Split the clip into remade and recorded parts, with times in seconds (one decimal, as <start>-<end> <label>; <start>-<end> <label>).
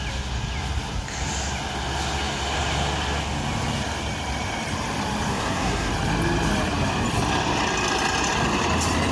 0.0-5.3 recorded; 5.3-5.9 remade; 5.9-9.1 recorded